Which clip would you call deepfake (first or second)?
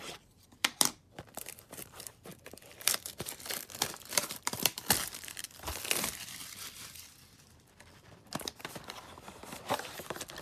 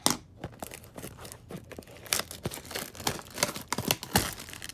first